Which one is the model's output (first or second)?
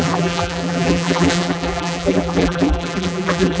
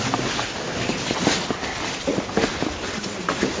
first